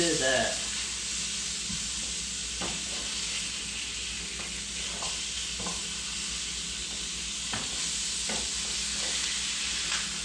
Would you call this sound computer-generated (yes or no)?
no